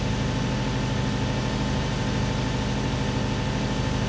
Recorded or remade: recorded